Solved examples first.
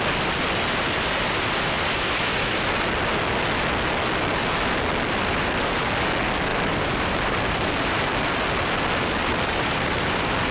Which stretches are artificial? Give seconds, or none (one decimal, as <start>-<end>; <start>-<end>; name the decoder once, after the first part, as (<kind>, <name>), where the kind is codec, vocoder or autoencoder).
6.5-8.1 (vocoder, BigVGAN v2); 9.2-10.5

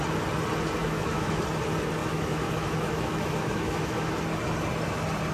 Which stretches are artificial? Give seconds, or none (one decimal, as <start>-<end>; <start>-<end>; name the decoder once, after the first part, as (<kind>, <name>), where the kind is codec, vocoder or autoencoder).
0.8-1.4 (autoencoder, DAC-VAE); 2.0-4.1

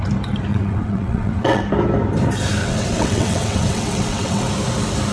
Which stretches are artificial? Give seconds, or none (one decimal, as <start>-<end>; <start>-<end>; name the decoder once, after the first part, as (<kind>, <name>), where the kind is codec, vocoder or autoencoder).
0.5-1.6 (vocoder, WaveNeXt); 2.6-4.5

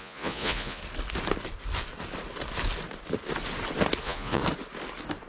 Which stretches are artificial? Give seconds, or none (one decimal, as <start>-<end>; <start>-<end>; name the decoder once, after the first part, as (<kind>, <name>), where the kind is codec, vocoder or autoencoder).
0.0-0.8 (vocoder, Vocos); 4.0-4.4

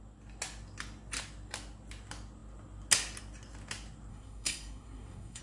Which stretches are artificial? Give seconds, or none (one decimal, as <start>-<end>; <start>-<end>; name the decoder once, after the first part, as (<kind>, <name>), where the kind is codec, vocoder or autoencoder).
4.1-5.4 (codec, SNAC)